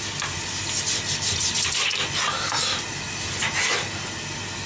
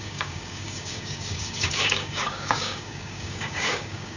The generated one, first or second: second